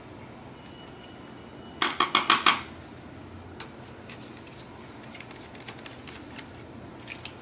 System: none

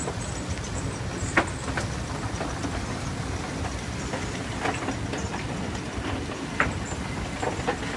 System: none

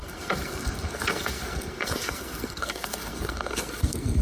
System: codec, SNAC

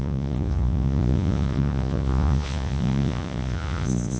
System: vocoder, Vocos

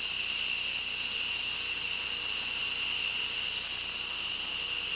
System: none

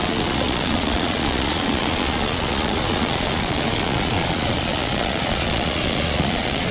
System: vocoder, Vocos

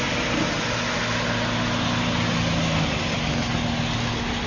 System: none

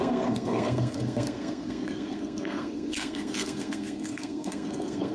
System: codec, SNAC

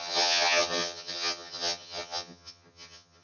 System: vocoder, HiFi-GAN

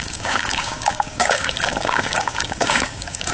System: codec, DAC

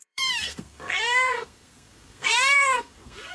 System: codec, SNAC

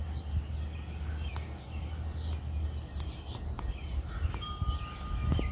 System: none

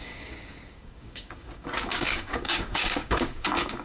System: codec, DAC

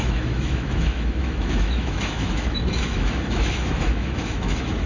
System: autoencoder, DAC-VAE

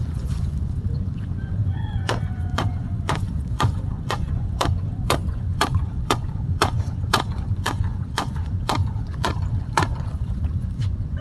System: vocoder, Vocos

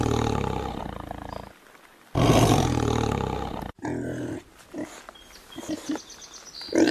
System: none